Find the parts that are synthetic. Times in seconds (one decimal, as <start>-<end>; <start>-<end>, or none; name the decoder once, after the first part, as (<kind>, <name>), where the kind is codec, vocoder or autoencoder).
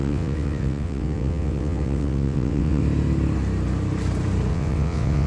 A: 0.0-2.8 (vocoder, WaveNeXt); 4.5-5.3